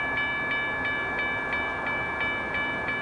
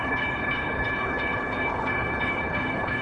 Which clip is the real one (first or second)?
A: first